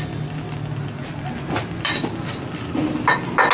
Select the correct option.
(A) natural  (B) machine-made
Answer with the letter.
A